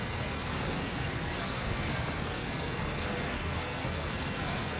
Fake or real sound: fake